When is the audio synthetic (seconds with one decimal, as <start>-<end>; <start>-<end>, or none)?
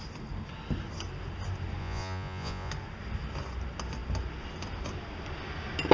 1.8-2.7